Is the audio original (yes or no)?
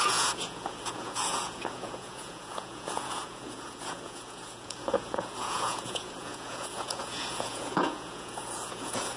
no